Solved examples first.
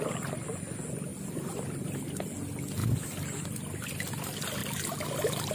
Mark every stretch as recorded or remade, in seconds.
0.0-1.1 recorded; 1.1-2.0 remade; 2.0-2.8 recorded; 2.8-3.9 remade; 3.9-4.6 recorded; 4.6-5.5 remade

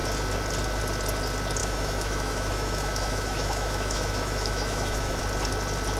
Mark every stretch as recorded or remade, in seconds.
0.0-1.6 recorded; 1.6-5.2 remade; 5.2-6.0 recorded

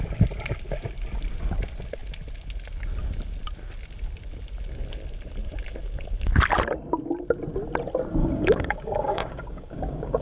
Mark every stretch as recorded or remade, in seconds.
0.0-8.2 recorded; 8.2-10.2 remade

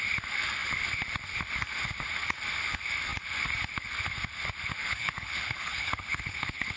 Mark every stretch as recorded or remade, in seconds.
0.0-4.8 recorded; 4.8-6.8 remade

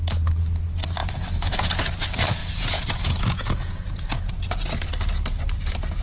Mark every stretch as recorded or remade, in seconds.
0.0-1.0 recorded; 1.0-1.8 remade; 1.8-2.4 recorded; 2.4-4.3 remade; 4.3-6.0 recorded

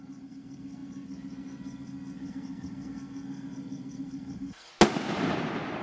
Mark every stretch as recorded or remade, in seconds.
0.0-4.7 remade; 4.7-5.8 recorded

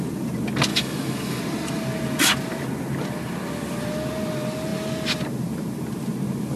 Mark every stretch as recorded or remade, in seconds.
0.0-0.7 recorded; 0.7-1.4 remade; 1.4-6.6 recorded

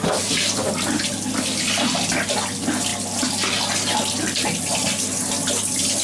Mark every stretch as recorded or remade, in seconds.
0.0-6.0 recorded